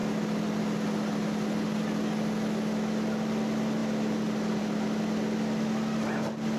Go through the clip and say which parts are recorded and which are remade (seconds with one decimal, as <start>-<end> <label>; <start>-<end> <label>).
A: 0.0-6.6 recorded